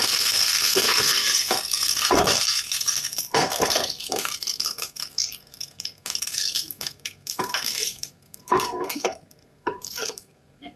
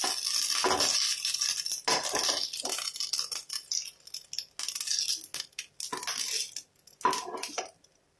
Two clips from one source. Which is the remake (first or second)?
first